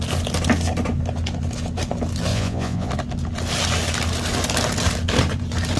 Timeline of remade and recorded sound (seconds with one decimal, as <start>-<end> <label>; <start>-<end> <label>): 0.0-2.3 recorded; 2.3-2.9 remade; 2.9-5.8 recorded